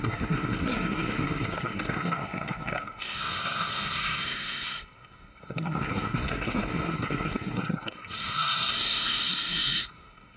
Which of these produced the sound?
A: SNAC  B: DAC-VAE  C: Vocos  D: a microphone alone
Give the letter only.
A